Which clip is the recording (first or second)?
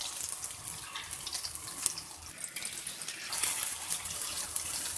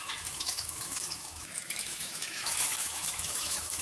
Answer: first